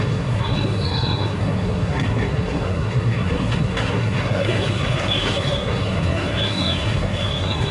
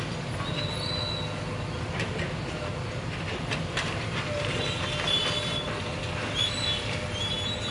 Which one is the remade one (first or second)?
first